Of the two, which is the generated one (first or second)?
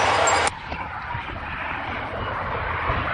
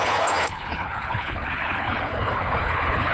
second